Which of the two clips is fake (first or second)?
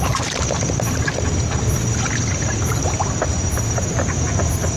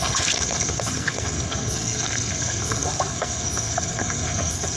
second